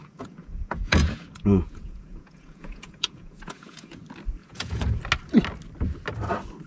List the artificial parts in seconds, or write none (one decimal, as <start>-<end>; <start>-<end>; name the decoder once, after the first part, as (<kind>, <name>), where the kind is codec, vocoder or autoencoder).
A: 0.0-4.0 (vocoder, Vocos); 4.4-5.0